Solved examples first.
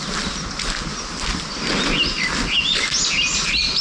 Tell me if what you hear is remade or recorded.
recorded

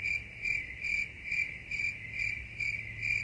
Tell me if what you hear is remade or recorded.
recorded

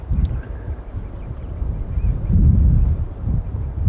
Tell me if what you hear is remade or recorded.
remade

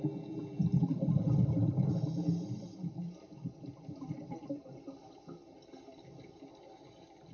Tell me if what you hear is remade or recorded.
recorded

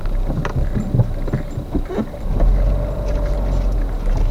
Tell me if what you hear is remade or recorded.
recorded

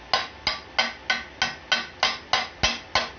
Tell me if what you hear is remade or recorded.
recorded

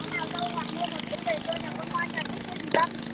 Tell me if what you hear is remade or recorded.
recorded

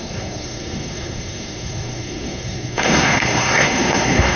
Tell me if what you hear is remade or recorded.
remade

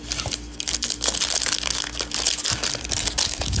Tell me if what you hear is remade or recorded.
recorded